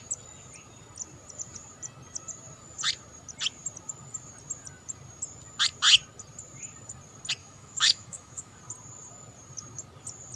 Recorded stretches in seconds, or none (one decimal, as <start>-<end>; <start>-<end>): 0.0-7.4; 8.6-10.4